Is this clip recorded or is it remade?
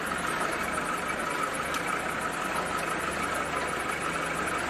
recorded